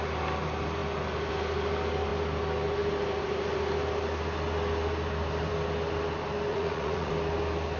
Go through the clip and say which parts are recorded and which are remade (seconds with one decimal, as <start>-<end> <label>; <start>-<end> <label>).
0.0-6.5 recorded; 6.5-7.1 remade; 7.1-7.8 recorded

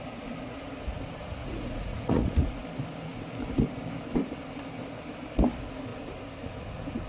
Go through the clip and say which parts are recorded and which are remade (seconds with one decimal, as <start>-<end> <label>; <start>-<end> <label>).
0.0-1.4 recorded; 1.4-2.5 remade; 2.5-7.1 recorded

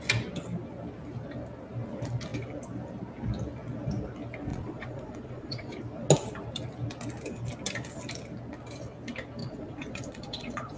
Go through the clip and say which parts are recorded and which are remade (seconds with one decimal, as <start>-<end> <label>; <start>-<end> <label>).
0.0-4.5 recorded; 4.5-5.7 remade; 5.7-9.4 recorded; 9.4-10.8 remade